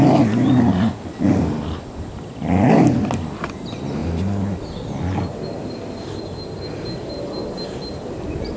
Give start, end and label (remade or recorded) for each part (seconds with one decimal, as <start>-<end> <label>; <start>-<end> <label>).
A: 0.0-8.6 recorded